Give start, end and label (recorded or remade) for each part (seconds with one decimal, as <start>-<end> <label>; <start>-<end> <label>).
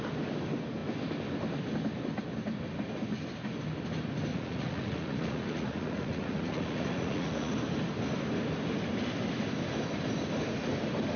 0.0-4.3 recorded; 4.3-7.5 remade; 7.5-11.2 recorded